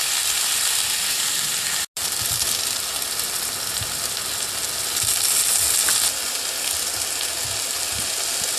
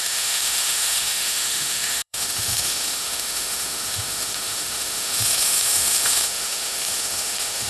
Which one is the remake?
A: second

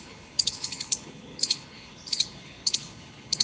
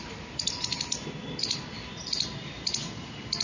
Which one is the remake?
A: first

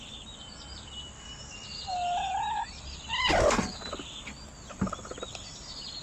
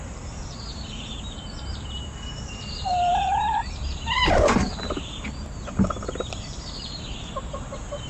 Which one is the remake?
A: second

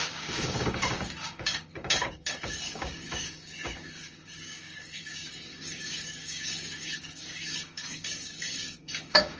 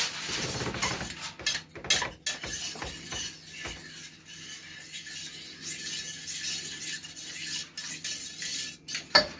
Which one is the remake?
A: first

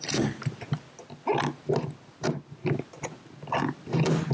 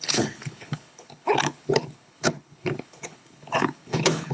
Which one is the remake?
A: second